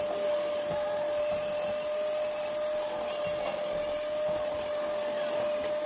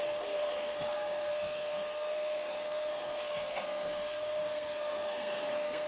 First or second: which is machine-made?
second